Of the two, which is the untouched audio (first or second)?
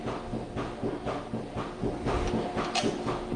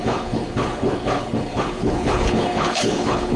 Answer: first